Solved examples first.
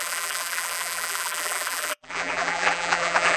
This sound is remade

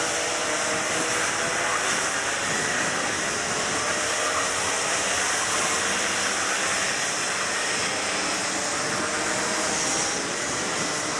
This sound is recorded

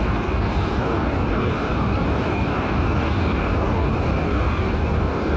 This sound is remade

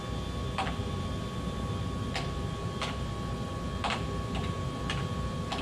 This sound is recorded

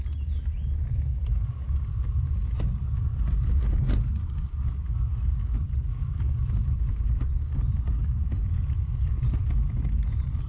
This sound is recorded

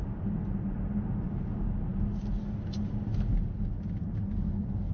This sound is recorded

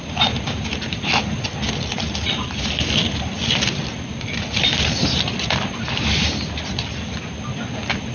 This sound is recorded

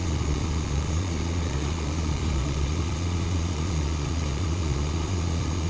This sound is remade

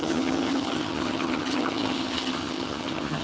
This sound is remade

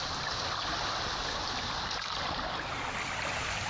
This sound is recorded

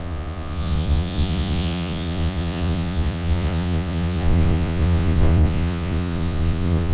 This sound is remade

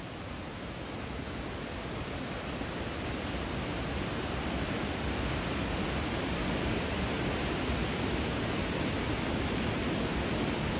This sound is recorded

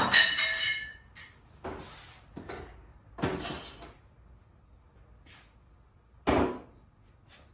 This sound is recorded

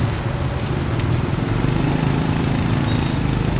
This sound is recorded